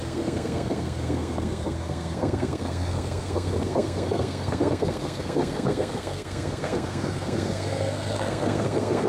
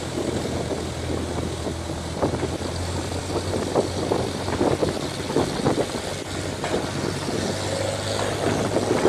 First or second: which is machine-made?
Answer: first